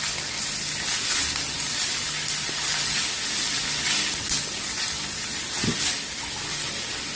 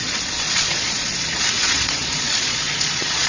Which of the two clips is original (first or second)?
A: first